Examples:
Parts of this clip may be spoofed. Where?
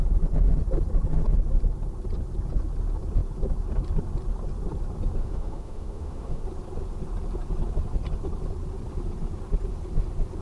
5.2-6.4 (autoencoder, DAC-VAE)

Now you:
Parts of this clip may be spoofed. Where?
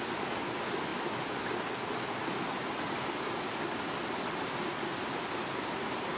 none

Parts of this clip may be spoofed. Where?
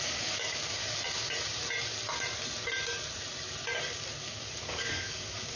0.0-0.8 (codec, DAC); 4.2-5.6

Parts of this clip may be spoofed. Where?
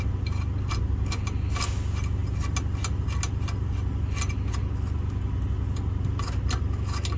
none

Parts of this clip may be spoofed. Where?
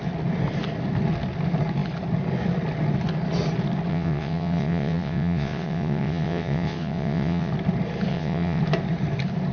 3.9-7.5 (vocoder, WaveNeXt); 8.1-8.6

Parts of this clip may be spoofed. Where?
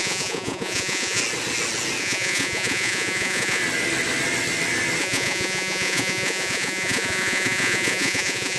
0.0-1.2 (vocoder, Vocos); 2.0-3.6; 5.0-8.6